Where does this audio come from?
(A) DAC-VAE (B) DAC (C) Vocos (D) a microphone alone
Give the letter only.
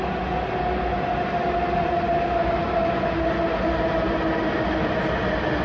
D